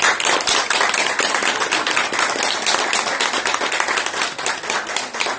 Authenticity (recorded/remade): recorded